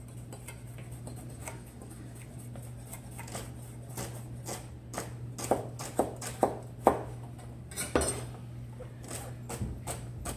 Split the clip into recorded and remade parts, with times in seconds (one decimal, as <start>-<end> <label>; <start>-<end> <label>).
0.0-1.4 recorded; 1.4-2.3 remade; 2.3-10.4 recorded